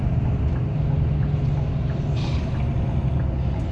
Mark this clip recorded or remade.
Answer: recorded